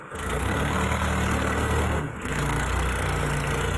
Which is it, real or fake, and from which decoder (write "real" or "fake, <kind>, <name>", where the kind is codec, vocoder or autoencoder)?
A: fake, codec, SNAC